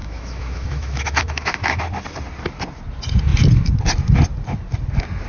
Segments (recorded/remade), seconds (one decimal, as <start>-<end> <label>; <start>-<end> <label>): 0.0-1.8 remade; 1.8-5.3 recorded